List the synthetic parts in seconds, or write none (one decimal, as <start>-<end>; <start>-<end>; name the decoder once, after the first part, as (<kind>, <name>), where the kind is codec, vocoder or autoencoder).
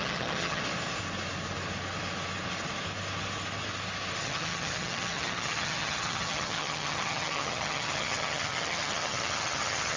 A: 0.0-0.6 (vocoder, HiFi-GAN); 4.2-10.0